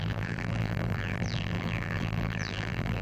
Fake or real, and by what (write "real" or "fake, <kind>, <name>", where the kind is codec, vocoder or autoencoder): fake, vocoder, BigVGAN v2